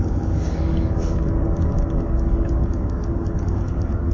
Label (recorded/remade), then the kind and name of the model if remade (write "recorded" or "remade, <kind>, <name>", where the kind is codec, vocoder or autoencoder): remade, codec, DAC